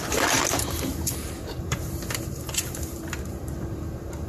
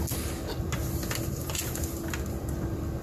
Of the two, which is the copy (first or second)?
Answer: first